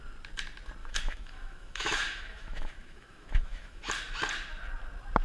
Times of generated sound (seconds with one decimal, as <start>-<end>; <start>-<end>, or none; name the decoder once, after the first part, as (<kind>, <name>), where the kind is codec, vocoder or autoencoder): 0.8-3.9 (autoencoder, DAC-VAE)